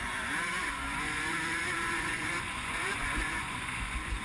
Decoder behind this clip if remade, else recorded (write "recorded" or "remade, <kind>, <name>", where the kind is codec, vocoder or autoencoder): remade, vocoder, Vocos